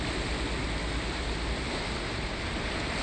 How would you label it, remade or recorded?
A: recorded